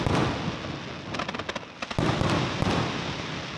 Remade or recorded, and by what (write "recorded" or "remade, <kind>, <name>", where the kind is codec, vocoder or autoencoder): recorded